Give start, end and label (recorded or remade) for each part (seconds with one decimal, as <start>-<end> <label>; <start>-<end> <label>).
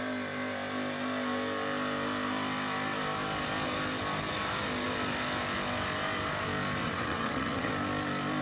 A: 0.0-6.8 recorded; 6.8-7.7 remade; 7.7-8.4 recorded